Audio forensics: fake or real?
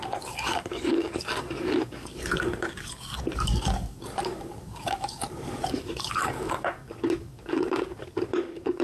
fake